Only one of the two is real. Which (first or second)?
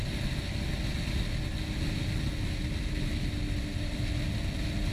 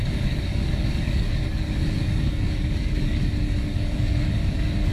first